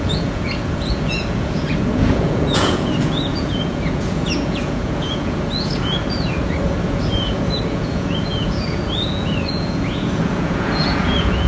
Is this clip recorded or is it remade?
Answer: remade